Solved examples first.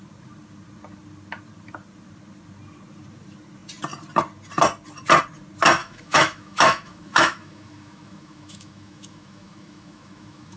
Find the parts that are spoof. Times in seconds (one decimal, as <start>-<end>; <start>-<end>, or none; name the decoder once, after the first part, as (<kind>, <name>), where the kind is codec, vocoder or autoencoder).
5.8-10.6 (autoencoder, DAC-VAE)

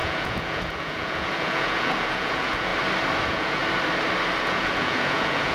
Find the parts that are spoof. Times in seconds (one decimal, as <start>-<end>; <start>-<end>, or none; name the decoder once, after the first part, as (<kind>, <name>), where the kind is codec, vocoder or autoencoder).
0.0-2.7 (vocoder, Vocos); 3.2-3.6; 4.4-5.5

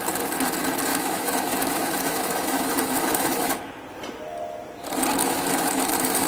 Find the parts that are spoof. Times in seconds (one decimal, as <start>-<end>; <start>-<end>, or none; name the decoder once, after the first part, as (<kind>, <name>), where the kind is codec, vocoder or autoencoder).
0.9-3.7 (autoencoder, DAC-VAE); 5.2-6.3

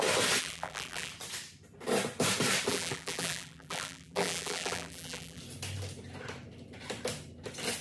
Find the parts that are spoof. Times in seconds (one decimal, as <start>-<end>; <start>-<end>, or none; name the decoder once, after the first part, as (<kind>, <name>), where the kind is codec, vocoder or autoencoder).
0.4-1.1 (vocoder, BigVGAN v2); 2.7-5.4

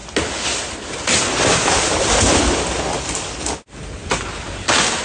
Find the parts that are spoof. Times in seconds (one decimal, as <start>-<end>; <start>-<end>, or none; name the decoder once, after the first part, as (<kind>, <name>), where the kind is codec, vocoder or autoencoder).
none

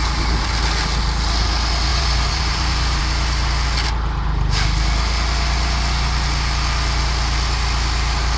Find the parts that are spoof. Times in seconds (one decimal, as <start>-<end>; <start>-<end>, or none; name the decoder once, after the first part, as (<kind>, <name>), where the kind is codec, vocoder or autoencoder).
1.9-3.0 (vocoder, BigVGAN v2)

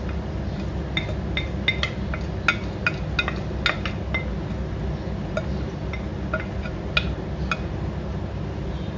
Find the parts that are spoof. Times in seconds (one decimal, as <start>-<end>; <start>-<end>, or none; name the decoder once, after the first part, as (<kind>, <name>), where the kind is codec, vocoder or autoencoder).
none